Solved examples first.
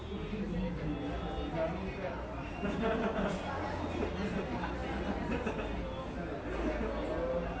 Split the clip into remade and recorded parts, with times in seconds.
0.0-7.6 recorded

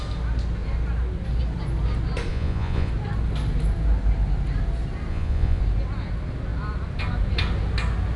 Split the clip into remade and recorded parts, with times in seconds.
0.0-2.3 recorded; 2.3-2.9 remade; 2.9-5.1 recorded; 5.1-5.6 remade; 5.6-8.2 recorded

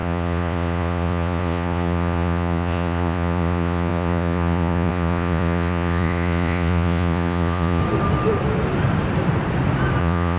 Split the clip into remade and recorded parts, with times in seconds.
0.0-7.8 remade; 7.8-10.0 recorded; 10.0-10.4 remade

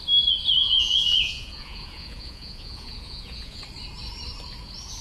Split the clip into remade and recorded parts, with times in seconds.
0.0-0.6 recorded; 0.6-3.6 remade; 3.6-5.0 recorded